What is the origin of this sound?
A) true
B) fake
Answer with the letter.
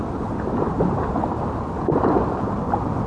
A